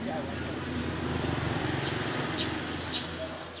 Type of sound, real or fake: real